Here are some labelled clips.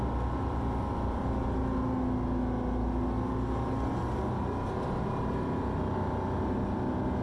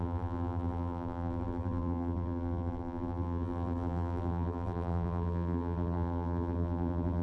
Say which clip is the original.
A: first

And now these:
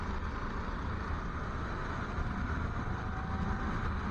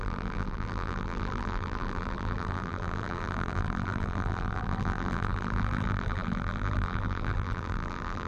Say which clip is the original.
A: first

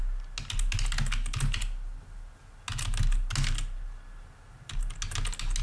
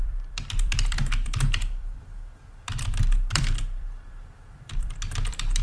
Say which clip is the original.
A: first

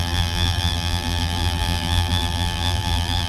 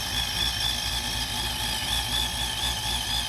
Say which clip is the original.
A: second